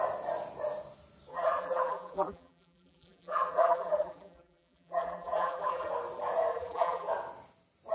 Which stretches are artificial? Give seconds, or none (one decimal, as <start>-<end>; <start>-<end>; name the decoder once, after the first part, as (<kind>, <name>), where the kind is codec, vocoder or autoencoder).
1.3-5.9 (vocoder, BigVGAN v2); 6.5-7.1